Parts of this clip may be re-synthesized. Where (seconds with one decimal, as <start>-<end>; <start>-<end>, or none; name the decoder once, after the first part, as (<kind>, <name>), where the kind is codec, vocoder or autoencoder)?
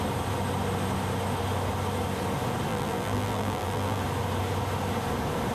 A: 2.7-4.0 (vocoder, BigVGAN v2)